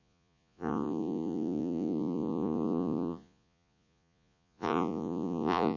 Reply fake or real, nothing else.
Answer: fake